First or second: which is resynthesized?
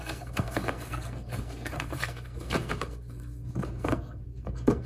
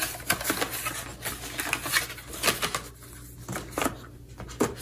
first